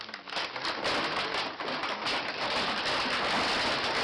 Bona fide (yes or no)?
yes